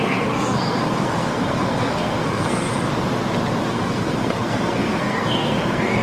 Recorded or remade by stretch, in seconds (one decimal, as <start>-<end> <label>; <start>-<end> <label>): 0.0-2.7 remade; 2.7-3.7 recorded; 3.7-6.0 remade